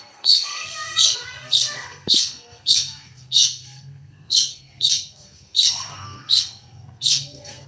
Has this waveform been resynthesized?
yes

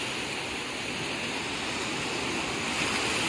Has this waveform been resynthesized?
no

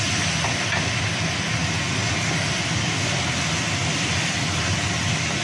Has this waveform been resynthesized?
no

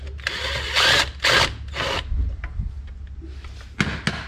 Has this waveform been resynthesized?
no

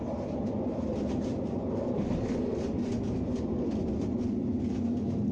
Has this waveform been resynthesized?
no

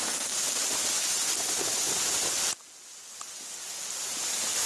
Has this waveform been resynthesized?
no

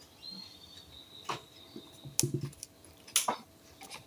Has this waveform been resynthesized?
no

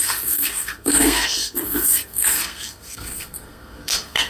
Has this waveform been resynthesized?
yes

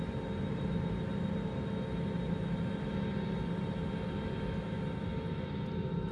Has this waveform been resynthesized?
no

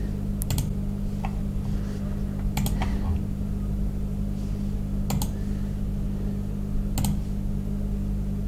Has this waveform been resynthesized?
no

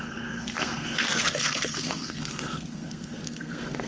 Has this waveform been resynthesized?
yes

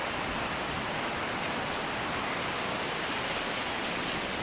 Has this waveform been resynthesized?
no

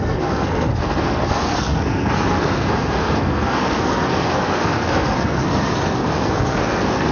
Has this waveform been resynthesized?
yes